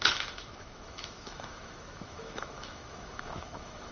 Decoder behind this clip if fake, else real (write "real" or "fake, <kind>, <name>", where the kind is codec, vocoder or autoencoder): fake, autoencoder, DAC-VAE